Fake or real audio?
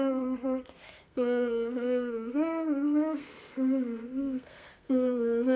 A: fake